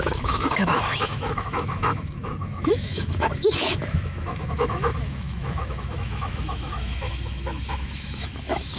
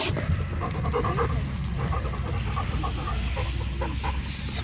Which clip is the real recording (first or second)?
second